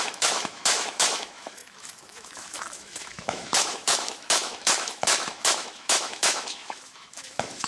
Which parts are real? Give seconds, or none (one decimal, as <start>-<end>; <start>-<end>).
none